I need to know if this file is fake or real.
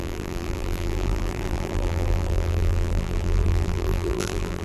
fake